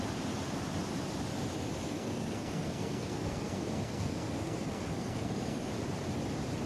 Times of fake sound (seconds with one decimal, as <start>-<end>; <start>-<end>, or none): 1.9-5.7